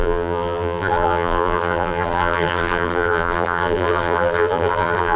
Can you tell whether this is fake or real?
fake